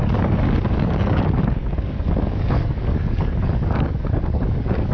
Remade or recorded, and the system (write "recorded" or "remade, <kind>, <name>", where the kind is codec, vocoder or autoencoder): remade, codec, DAC